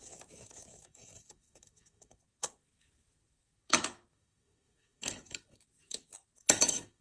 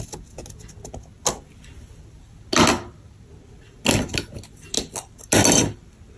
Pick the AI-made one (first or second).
first